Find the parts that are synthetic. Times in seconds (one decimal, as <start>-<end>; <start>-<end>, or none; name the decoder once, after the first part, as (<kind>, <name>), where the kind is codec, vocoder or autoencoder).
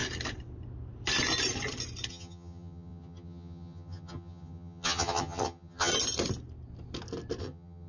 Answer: 2.1-5.9 (vocoder, HiFi-GAN); 7.4-7.9